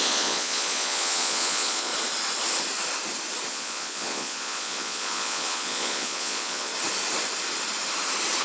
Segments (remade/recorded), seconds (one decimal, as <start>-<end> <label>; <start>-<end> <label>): 0.0-1.9 remade; 1.9-3.5 recorded; 3.5-6.7 remade; 6.7-8.4 recorded